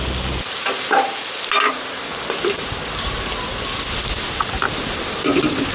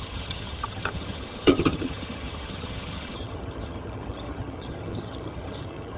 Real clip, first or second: first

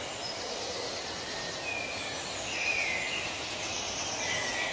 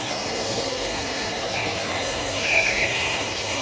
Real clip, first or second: first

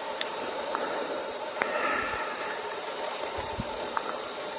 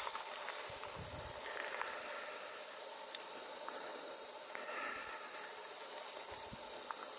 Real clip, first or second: second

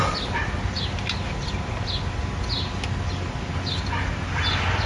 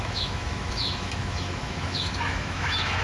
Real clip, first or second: first